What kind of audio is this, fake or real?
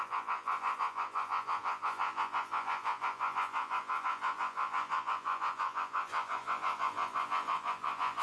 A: fake